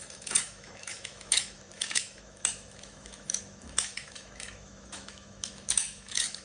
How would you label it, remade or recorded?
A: remade